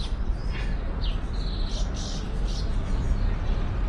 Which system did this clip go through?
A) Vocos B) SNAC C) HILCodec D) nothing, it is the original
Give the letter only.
D